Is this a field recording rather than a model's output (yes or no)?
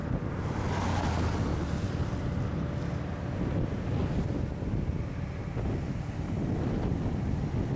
yes